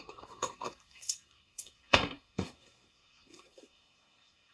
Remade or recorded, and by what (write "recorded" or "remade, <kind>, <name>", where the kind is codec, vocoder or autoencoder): remade, codec, SNAC